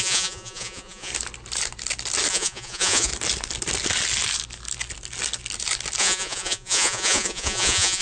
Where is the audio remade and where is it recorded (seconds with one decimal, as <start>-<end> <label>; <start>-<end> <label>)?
0.0-1.1 remade; 1.1-2.3 recorded; 2.3-3.1 remade; 3.1-6.0 recorded; 6.0-8.0 remade